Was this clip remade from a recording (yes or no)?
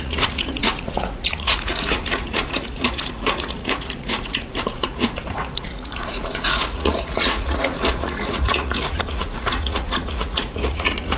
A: yes